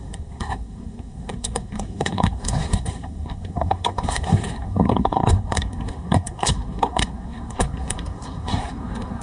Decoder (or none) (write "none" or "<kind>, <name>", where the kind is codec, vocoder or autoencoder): codec, SNAC